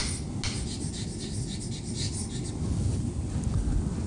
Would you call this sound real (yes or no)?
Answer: yes